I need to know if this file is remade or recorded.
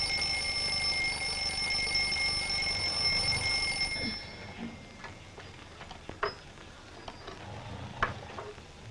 recorded